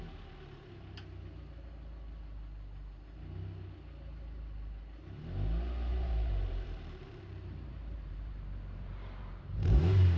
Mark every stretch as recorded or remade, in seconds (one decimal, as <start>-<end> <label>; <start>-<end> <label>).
0.0-5.9 recorded; 5.9-9.6 remade; 9.6-10.2 recorded